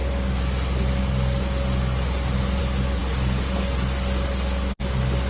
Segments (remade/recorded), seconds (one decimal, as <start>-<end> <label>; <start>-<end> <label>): 0.0-5.3 recorded